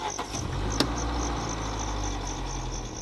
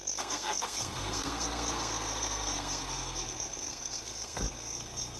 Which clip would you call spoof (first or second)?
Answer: second